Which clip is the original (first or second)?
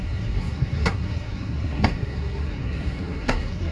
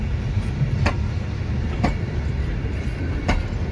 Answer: second